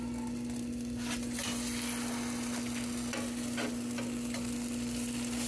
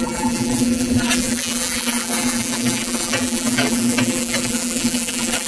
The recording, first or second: first